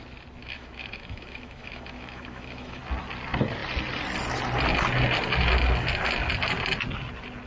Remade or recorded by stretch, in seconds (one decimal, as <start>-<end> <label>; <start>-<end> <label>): 0.0-0.4 recorded; 0.4-2.8 remade; 2.8-7.5 recorded